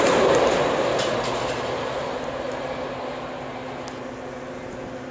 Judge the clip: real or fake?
real